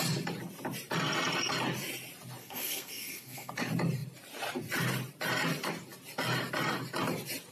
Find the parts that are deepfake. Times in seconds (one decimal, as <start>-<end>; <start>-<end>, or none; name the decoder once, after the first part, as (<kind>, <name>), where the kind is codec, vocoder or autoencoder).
2.4-3.5 (codec, SNAC)